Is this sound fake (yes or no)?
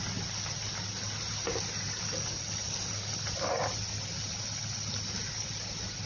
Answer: no